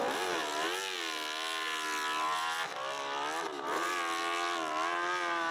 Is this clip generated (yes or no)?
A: no